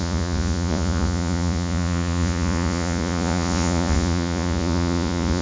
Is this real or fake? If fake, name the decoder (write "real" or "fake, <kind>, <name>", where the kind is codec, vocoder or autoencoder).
fake, vocoder, Vocos